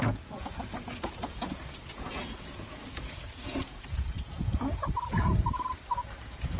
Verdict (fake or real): fake